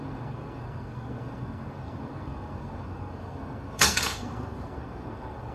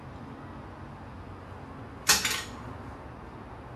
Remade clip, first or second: first